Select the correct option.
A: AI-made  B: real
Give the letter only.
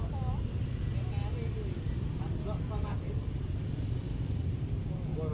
B